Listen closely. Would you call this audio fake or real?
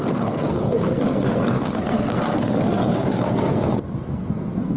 fake